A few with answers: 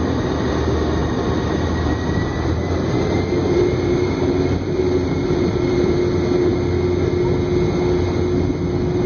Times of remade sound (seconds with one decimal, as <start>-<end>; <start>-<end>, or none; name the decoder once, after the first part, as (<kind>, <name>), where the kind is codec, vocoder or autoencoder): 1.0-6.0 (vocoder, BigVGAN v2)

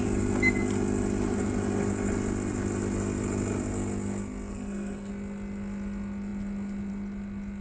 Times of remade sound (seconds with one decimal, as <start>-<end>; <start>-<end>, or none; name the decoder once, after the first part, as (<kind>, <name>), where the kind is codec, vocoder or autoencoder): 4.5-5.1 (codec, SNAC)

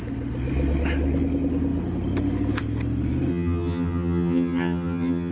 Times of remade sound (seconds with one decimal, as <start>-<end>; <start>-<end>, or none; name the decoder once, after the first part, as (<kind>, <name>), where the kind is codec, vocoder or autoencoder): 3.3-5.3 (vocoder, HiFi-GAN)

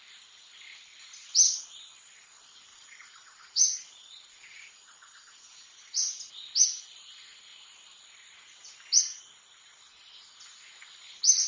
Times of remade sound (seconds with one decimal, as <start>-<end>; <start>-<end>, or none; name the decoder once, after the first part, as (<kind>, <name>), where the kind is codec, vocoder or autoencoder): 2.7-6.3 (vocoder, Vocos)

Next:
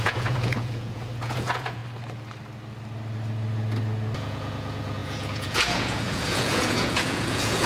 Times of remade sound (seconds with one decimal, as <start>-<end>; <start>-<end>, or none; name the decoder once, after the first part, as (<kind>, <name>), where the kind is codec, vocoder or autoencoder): 0.0-1.8 (vocoder, Vocos); 4.2-7.7

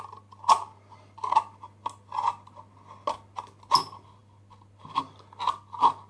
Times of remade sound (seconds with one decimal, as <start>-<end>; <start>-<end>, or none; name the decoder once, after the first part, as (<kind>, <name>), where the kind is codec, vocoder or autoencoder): none

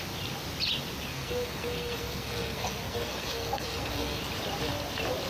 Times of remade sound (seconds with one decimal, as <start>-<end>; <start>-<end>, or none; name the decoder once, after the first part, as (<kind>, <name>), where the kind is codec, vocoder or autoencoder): 1.1-4.2 (codec, SNAC)